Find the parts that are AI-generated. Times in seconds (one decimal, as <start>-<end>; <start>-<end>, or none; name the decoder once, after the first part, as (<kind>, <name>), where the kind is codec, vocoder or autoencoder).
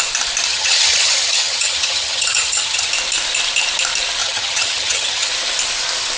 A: 0.5-2.9 (vocoder, HiFi-GAN); 4.2-5.3